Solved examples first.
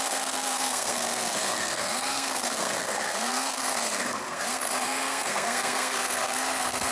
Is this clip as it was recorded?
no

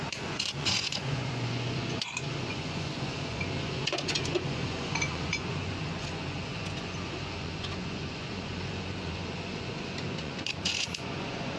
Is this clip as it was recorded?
no